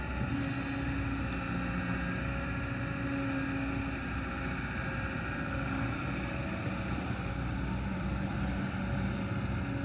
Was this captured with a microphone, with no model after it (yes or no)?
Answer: yes